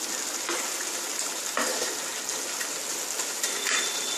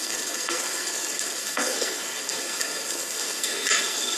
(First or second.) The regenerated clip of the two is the second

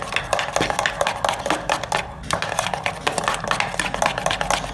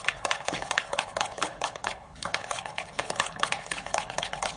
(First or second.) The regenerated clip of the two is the second